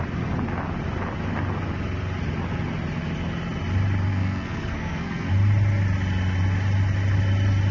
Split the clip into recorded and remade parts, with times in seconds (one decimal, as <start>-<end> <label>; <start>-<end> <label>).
0.0-4.1 recorded; 4.1-5.3 remade; 5.3-7.7 recorded